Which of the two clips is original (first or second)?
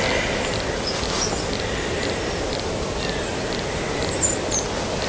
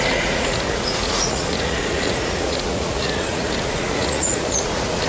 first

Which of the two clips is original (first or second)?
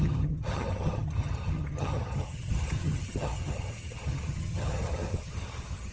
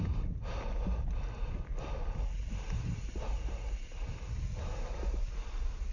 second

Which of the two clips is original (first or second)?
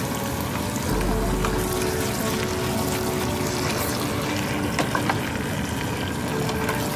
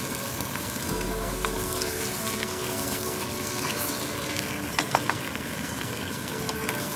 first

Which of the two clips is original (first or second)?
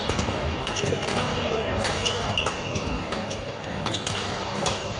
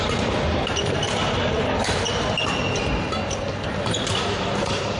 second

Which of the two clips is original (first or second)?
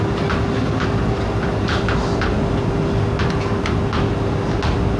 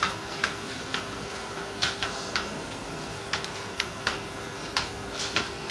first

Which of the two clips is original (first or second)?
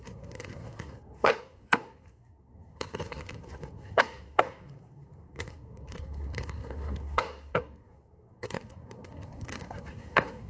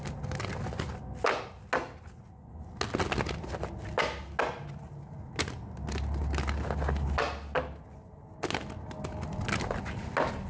second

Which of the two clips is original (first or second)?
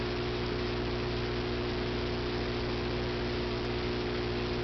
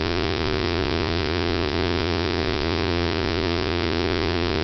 first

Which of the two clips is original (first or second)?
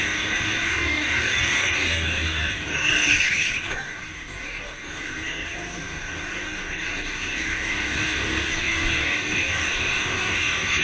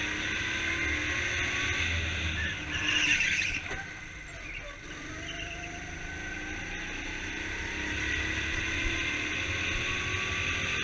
second